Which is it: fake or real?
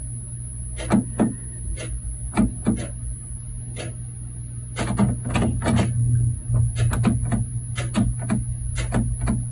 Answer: real